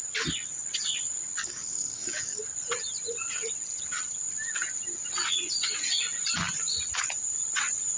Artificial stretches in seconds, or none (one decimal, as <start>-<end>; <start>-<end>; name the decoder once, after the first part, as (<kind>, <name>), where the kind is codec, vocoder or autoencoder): 1.4-2.4 (codec, DAC)